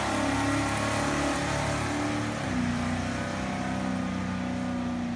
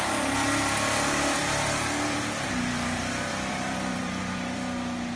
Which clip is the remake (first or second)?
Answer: second